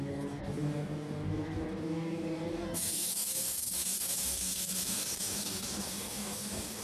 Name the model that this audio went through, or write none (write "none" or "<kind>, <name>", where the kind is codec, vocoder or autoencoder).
codec, DAC